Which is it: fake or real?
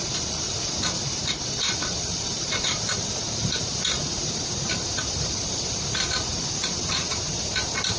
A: fake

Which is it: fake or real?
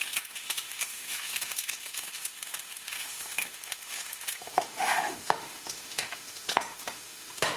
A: fake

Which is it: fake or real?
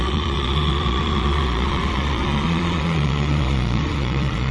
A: fake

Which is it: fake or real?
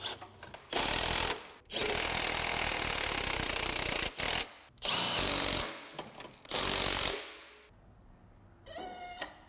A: real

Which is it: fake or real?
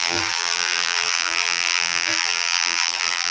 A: fake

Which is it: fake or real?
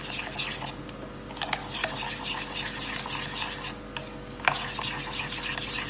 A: real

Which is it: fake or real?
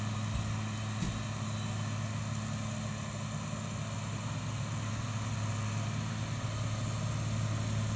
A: real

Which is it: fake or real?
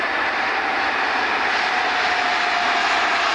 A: real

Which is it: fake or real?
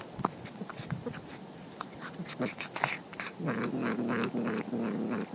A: real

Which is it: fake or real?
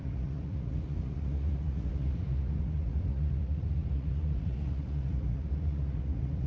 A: fake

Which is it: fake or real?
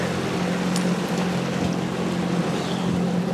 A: real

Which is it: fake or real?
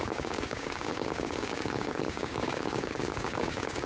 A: fake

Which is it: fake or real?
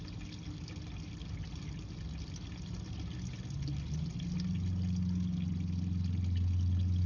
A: real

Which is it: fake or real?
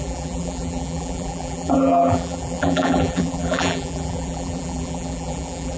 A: fake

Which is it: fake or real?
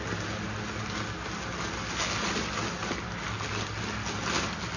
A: real